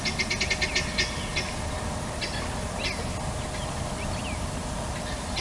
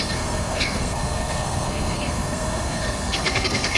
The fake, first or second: second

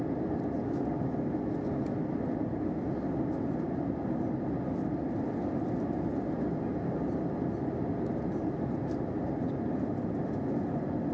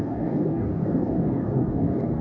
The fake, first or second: second